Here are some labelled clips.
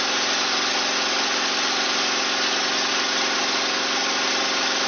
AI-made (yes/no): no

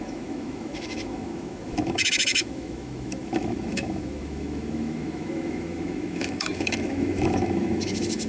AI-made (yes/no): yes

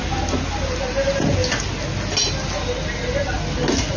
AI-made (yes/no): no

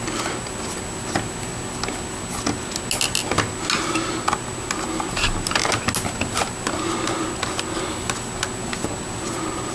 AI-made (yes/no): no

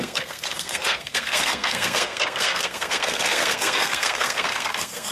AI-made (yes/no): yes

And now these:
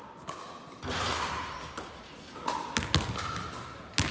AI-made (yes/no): no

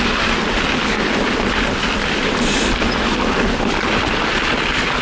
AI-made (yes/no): no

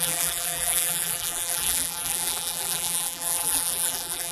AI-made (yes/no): yes